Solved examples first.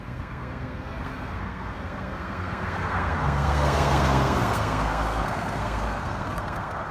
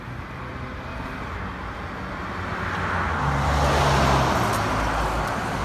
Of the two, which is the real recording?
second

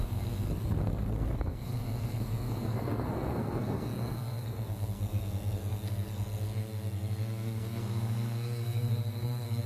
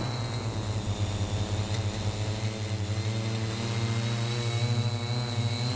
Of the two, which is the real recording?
second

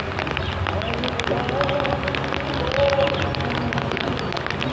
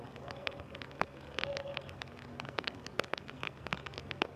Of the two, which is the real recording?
first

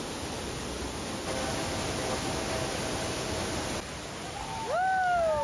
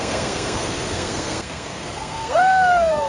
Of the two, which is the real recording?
first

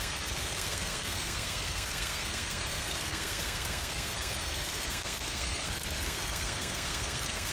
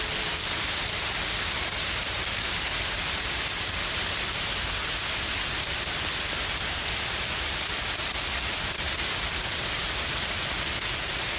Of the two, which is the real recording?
second